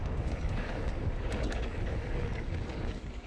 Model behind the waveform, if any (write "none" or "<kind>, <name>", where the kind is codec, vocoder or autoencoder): codec, DAC